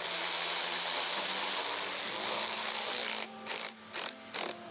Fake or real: fake